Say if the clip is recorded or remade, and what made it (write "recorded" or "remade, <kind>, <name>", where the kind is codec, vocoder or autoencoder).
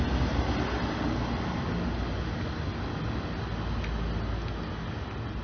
recorded